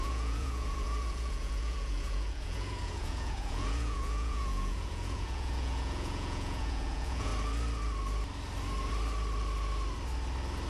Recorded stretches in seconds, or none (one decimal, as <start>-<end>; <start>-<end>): 7.3-10.7